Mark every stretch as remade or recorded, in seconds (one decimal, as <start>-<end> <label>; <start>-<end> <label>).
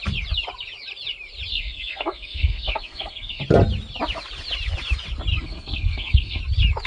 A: 0.0-1.5 recorded; 1.5-3.4 remade; 3.4-5.3 recorded; 5.3-6.4 remade; 6.4-6.9 recorded